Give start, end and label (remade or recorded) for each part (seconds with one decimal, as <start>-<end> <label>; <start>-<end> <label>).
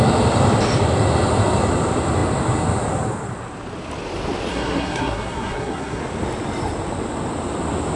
0.0-4.5 recorded; 4.5-6.0 remade; 6.0-8.0 recorded